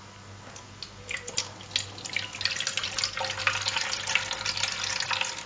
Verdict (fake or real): real